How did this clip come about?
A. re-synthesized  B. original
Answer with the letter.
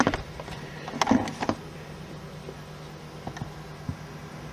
B